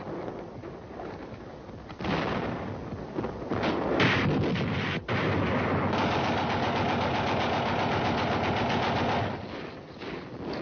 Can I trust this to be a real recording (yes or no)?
yes